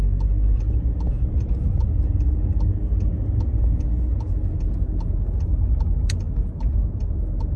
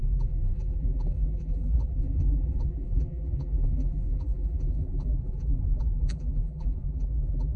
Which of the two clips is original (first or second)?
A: first